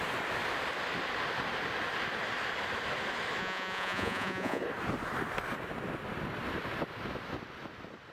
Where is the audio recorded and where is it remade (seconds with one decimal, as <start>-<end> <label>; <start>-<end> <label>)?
0.0-3.4 recorded; 3.4-4.6 remade; 4.6-8.1 recorded